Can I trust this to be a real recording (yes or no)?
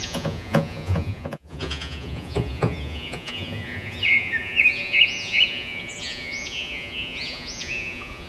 no